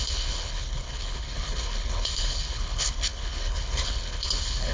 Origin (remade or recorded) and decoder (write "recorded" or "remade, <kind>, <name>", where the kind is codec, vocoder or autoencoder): remade, codec, HILCodec